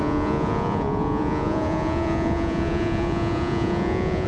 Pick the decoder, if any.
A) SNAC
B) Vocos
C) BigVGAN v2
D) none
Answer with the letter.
B